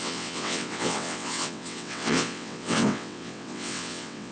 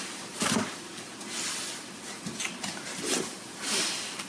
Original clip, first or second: second